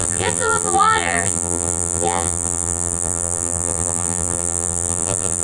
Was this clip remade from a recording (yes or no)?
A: yes